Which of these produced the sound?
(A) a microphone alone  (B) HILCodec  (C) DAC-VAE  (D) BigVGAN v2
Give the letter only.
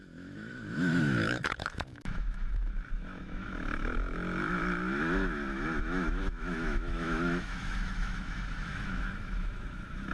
C